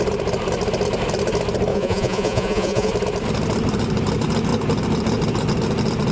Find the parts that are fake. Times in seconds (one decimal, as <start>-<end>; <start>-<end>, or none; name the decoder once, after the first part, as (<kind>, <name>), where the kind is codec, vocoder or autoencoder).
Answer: 1.7-2.9 (vocoder, Vocos)